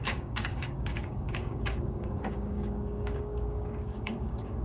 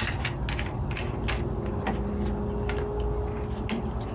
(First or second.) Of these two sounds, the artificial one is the first